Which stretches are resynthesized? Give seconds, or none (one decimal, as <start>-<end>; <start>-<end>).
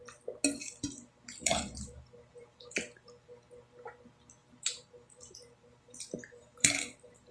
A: 0.6-3.3; 4.4-7.3